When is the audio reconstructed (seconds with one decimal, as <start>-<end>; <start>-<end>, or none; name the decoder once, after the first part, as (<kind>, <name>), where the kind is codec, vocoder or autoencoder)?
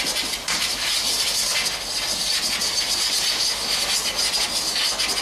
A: 0.0-1.5 (vocoder, BigVGAN v2); 2.4-3.5